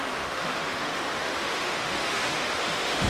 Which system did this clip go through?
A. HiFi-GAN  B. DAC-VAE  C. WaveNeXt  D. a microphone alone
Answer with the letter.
B